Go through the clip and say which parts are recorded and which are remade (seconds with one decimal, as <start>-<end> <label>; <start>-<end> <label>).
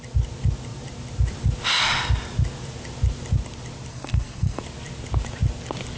0.0-3.9 recorded; 3.9-4.6 remade; 4.6-6.0 recorded